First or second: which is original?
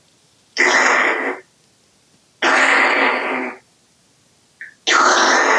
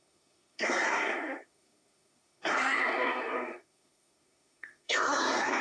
first